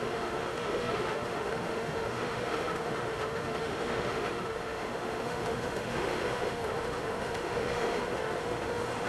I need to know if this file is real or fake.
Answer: fake